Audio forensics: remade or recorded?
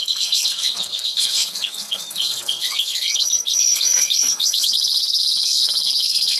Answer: remade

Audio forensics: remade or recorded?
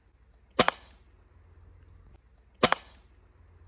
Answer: recorded